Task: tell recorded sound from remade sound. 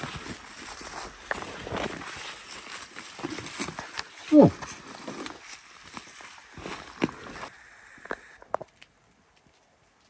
recorded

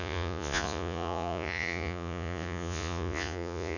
remade